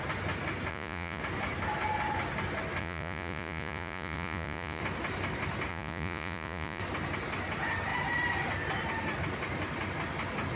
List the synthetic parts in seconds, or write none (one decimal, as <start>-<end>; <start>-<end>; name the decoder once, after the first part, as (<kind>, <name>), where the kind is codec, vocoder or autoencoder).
0.7-1.2 (vocoder, Vocos); 2.8-4.8; 5.7-6.8